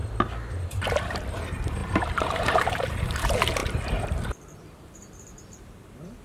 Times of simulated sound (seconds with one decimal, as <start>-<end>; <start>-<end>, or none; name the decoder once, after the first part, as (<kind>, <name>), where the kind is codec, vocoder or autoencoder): 0.6-6.2 (vocoder, BigVGAN v2)